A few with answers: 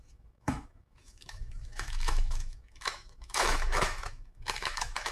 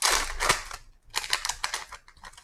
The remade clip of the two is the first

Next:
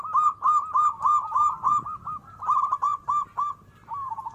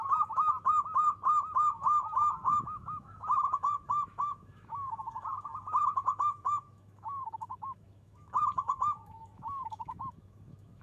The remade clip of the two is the second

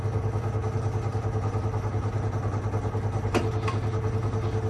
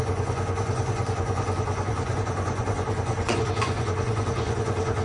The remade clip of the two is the second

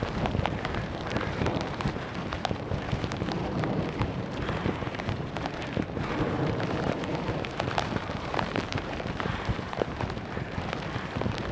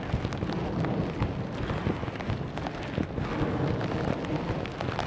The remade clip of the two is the first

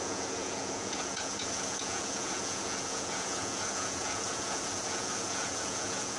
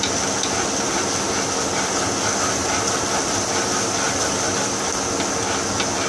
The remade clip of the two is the first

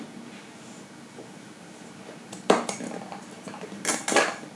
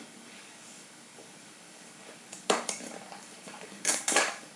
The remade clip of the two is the second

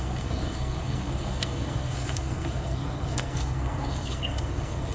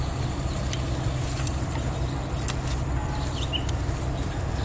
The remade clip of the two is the first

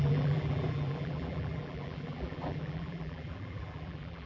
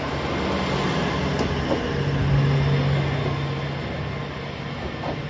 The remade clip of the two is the first